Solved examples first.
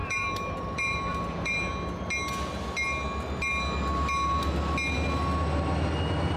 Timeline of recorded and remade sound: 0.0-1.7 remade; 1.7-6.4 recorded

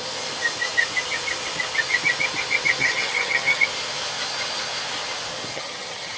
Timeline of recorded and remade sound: 0.0-2.8 recorded; 2.8-3.6 remade; 3.6-5.5 recorded; 5.5-6.2 remade

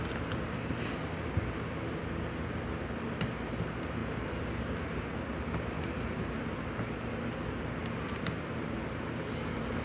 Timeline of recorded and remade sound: 0.0-9.8 recorded

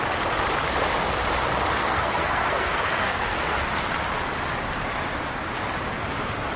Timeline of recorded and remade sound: 0.0-1.8 recorded; 1.8-3.7 remade; 3.7-6.6 recorded

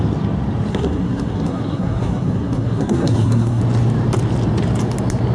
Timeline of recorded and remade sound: 0.0-0.7 recorded; 0.7-3.6 remade; 3.6-5.3 recorded

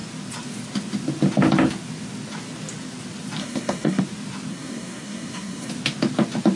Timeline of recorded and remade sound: 0.0-3.4 recorded; 3.4-4.0 remade; 4.0-4.5 recorded; 4.5-5.7 remade; 5.7-6.6 recorded